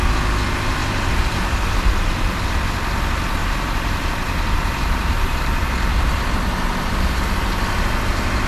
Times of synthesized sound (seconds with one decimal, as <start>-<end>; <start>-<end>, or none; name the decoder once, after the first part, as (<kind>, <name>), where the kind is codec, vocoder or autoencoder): 0.8-2.6 (vocoder, BigVGAN v2); 3.4-5.7